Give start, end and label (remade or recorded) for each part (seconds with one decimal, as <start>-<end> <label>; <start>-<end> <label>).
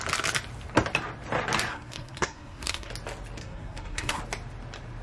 0.0-1.7 recorded; 1.7-2.9 remade; 2.9-3.4 recorded; 3.4-4.2 remade; 4.2-5.0 recorded